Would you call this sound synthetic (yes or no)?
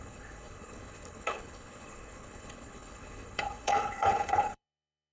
yes